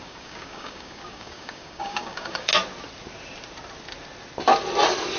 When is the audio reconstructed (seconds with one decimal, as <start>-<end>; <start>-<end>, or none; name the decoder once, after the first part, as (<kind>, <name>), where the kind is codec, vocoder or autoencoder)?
0.0-2.5 (codec, DAC)